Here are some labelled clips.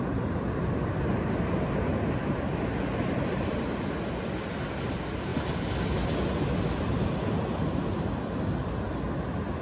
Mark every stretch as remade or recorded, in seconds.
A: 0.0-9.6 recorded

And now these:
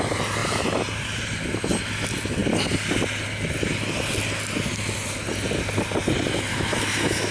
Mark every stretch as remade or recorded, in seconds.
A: 0.0-6.5 recorded; 6.5-7.3 remade

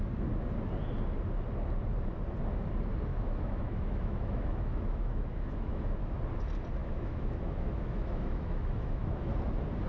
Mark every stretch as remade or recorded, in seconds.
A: 0.0-3.1 recorded; 3.1-6.2 remade; 6.2-6.8 recorded; 6.8-9.3 remade; 9.3-9.9 recorded

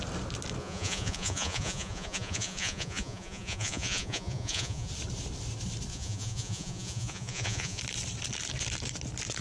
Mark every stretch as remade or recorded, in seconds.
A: 0.0-0.6 recorded; 0.6-4.9 remade; 4.9-5.9 recorded; 5.9-7.8 remade; 7.8-9.4 recorded

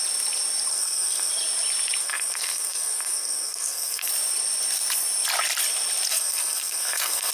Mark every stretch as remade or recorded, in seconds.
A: 0.0-0.7 recorded; 0.7-1.3 remade; 1.3-2.0 recorded; 2.0-4.1 remade; 4.1-6.1 recorded; 6.1-7.3 remade

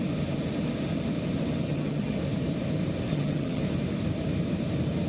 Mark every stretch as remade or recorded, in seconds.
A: 0.0-1.6 recorded; 1.6-2.2 remade; 2.2-3.1 recorded; 3.1-3.6 remade; 3.6-5.1 recorded

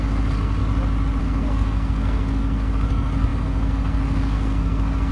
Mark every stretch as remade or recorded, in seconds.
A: 0.0-0.6 remade; 0.6-1.2 recorded; 1.2-5.1 remade